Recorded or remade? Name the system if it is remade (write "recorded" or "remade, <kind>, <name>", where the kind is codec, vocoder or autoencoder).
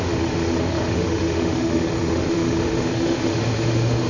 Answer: remade, autoencoder, DAC-VAE